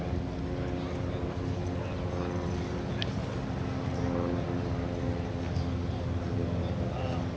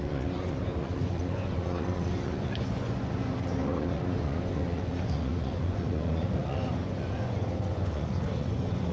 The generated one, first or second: second